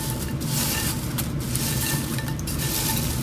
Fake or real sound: real